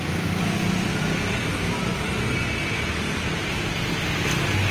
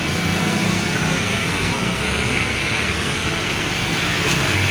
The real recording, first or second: first